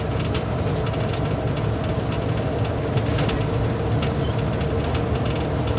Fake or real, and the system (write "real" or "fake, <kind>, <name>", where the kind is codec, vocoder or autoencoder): real